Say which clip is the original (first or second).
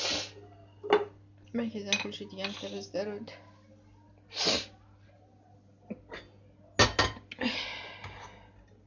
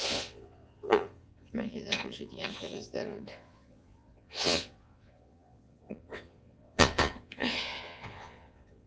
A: first